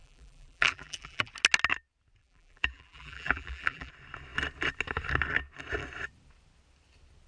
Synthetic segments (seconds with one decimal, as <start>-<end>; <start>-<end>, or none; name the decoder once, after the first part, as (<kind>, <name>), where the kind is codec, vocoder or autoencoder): 0.0-1.3 (vocoder, BigVGAN v2); 2.2-3.9